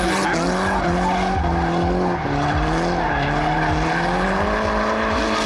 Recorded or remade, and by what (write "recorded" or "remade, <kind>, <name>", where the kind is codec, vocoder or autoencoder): recorded